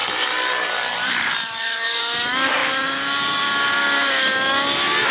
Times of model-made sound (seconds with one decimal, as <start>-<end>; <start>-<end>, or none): 0.0-2.0; 2.6-4.1

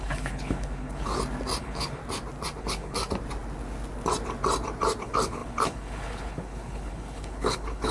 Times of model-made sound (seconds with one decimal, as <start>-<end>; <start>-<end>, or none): 0.0-1.1; 1.6-2.0; 2.6-3.0; 5.0-7.9